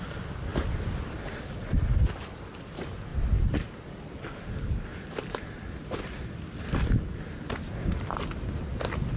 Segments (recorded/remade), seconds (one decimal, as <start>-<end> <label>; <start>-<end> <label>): 0.0-9.2 recorded